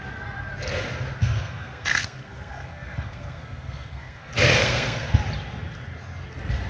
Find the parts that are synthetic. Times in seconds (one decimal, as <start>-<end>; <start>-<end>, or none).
1.2-5.2